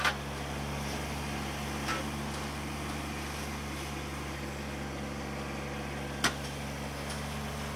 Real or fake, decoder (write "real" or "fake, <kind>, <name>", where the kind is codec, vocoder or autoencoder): real